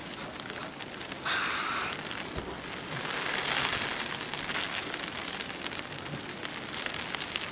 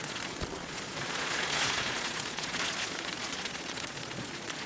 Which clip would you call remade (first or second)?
second